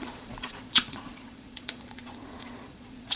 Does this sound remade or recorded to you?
remade